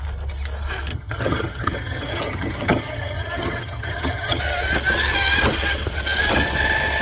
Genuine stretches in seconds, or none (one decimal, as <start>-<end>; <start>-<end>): 0.0-0.9; 4.4-7.0